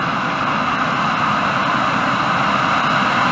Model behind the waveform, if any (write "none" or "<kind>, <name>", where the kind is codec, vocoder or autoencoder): none